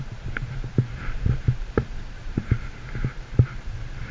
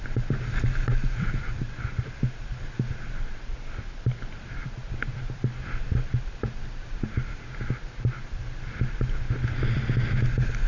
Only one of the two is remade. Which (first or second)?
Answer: first